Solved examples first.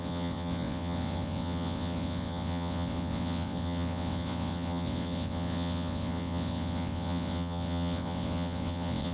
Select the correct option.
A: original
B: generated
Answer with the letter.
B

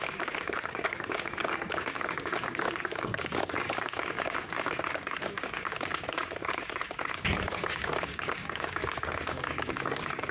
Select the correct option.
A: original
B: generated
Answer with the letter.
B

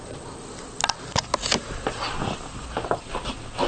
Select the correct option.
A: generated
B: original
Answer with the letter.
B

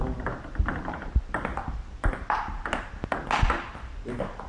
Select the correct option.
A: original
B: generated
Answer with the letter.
A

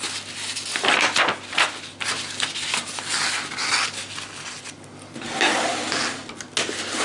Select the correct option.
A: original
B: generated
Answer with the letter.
A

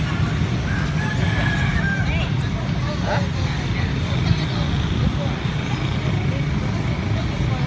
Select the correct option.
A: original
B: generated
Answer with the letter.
A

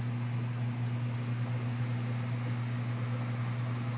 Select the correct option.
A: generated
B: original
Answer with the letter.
B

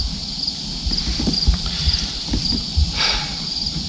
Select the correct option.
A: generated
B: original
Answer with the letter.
B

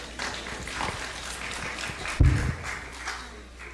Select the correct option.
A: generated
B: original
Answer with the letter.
B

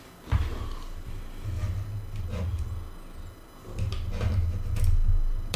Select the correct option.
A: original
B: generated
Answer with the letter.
A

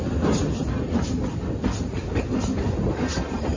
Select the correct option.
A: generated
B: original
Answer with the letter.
B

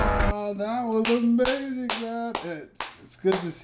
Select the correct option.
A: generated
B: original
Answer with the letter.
B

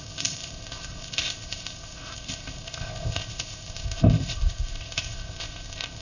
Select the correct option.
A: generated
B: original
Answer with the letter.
A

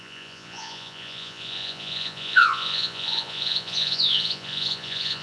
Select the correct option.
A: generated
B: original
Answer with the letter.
A